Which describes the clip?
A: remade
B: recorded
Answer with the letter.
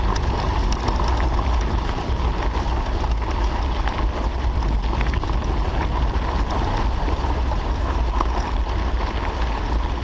B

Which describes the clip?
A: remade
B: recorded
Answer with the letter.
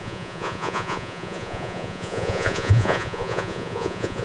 A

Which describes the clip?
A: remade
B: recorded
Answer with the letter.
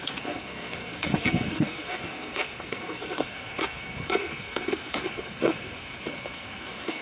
A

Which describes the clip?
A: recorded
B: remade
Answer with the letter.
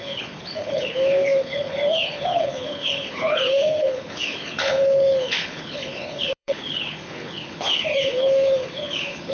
B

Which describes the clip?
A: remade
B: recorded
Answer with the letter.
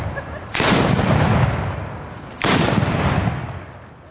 B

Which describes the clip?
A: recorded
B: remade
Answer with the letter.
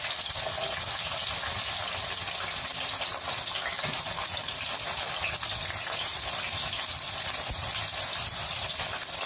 B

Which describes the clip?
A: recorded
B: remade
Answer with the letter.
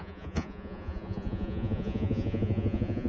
B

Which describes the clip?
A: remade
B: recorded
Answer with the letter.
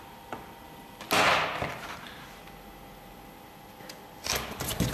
B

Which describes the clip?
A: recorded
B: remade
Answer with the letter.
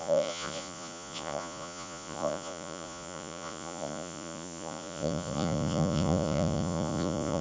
B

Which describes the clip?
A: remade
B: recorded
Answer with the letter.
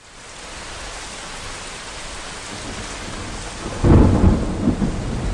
B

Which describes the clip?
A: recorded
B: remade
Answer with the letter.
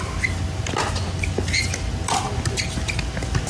A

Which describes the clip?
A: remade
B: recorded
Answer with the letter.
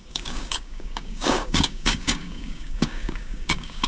A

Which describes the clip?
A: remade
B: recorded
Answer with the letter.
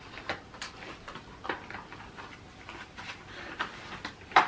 B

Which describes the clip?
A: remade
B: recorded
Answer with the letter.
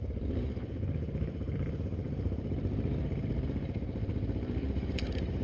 A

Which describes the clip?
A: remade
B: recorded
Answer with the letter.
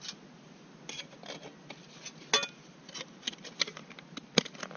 B